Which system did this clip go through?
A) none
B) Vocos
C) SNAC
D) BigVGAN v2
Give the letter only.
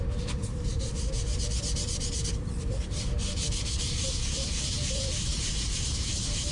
D